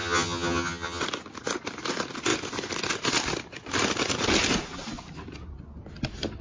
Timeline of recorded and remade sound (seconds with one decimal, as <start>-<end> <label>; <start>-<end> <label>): 0.0-1.0 remade; 1.0-6.4 recorded